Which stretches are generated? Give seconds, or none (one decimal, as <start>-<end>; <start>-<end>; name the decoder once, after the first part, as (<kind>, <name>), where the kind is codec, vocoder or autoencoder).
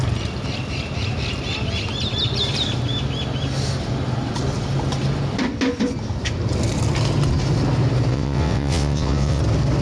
8.1-9.4 (vocoder, WaveNeXt)